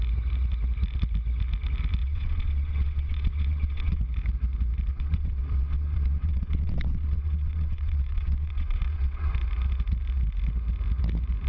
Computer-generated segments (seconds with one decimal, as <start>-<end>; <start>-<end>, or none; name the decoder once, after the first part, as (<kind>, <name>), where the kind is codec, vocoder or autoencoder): 2.0-4.0 (vocoder, WaveNeXt); 4.9-9.3